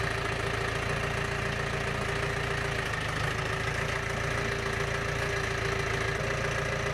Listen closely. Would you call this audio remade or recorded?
recorded